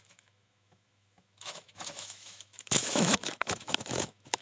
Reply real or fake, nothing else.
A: fake